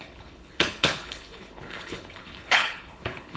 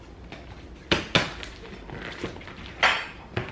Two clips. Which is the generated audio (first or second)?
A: first